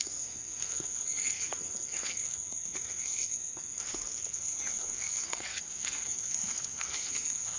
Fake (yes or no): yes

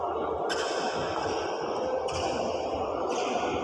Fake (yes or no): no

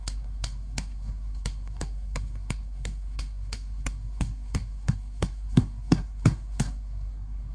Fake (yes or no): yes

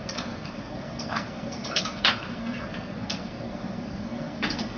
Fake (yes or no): yes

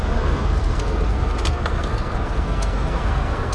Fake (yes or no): yes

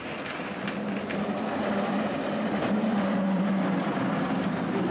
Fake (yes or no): no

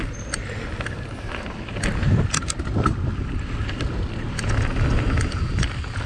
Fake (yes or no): no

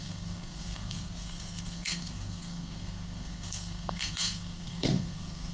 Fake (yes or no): yes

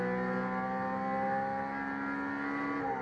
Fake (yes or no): no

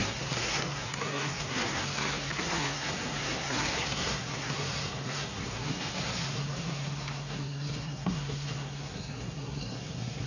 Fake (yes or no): yes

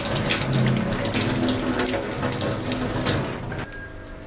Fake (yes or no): no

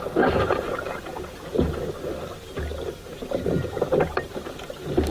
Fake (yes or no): no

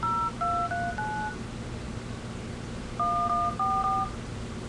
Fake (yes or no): no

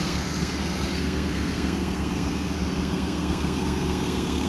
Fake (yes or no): yes